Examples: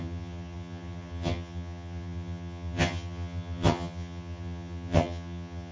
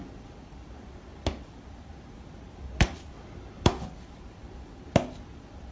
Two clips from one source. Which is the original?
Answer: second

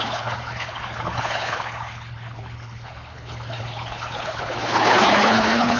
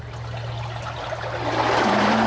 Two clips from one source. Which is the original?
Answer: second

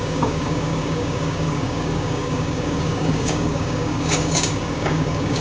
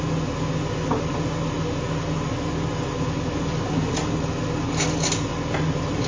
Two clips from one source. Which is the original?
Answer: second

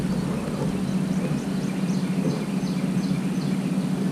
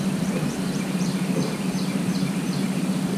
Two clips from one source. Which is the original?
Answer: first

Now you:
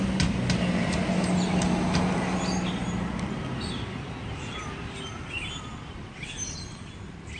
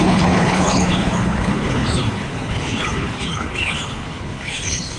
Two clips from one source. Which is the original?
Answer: first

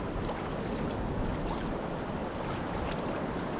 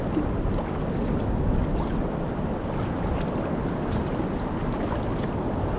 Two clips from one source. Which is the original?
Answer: second